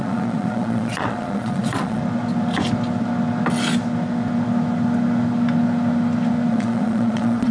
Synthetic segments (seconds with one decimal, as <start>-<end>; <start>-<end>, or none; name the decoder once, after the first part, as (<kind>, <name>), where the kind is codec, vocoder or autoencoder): 0.0-2.0 (vocoder, Vocos); 6.5-7.5